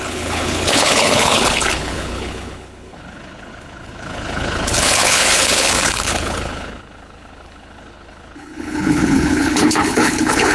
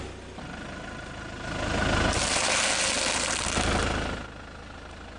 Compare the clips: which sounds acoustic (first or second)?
second